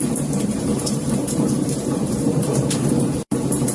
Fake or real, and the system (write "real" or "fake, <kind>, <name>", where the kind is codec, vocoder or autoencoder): fake, vocoder, BigVGAN v2